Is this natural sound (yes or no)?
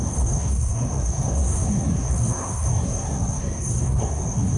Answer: no